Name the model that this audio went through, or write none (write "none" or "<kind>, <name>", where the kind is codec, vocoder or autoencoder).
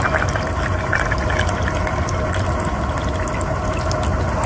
none